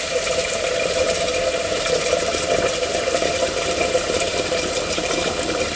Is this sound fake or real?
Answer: fake